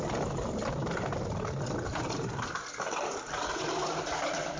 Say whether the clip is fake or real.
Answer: real